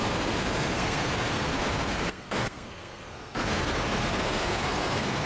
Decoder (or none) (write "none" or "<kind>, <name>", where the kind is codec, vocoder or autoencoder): codec, SNAC